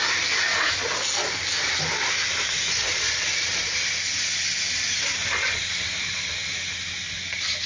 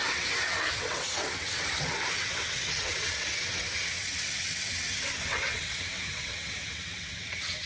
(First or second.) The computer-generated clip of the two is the second